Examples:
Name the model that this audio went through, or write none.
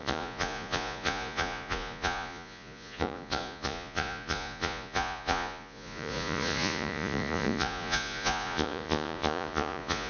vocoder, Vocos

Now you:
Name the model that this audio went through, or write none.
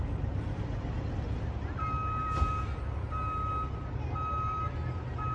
none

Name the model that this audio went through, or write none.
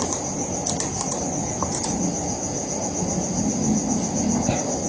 none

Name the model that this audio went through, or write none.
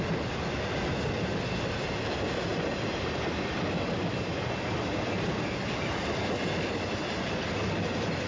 none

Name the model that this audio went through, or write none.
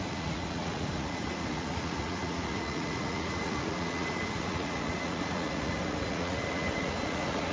vocoder, Vocos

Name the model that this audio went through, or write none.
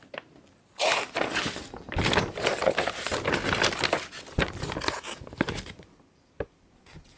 none